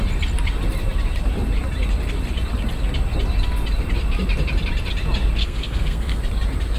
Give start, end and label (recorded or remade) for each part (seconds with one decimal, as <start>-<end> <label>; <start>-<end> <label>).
0.0-5.4 recorded; 5.4-6.2 remade; 6.2-6.8 recorded